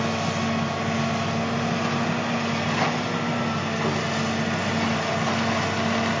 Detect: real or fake real